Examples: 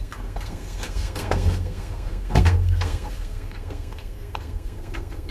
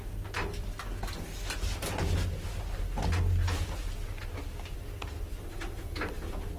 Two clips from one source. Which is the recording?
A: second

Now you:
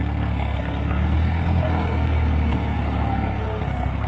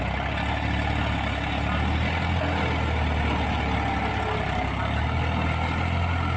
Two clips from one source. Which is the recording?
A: second